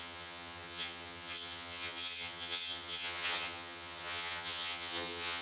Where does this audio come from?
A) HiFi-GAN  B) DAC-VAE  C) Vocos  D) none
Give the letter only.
A